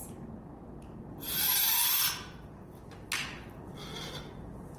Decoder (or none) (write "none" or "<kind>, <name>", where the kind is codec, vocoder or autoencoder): none